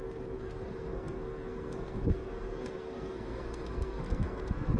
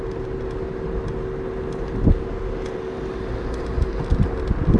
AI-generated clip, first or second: first